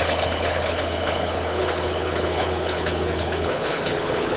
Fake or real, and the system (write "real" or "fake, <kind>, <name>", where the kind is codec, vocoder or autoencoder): fake, codec, HILCodec